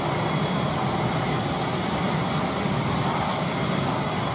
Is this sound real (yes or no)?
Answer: yes